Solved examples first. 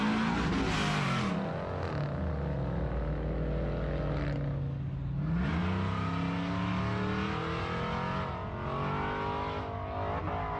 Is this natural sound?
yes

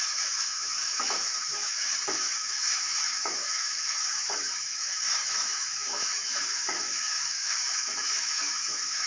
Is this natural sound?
no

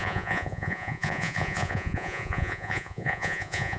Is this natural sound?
no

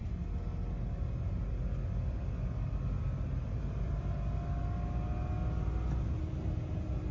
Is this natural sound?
yes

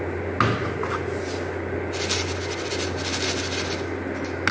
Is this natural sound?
yes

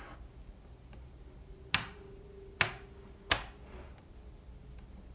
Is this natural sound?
yes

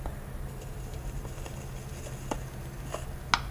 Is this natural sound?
yes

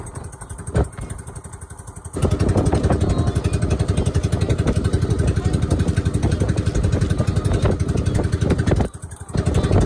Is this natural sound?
yes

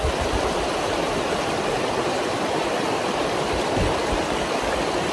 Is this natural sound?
no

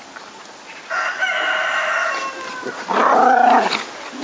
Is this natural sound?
yes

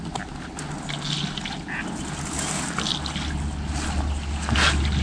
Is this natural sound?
yes